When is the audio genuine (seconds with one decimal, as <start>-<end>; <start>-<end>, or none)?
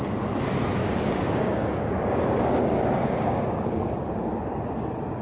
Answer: 0.0-0.8; 3.9-5.2